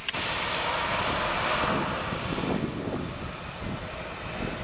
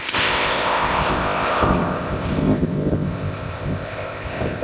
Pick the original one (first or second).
first